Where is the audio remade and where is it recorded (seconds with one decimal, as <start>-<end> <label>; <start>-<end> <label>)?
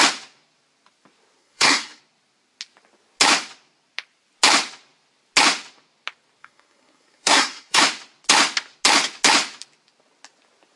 0.0-1.4 recorded; 1.4-2.0 remade; 2.0-6.4 recorded; 6.4-7.8 remade; 7.8-10.8 recorded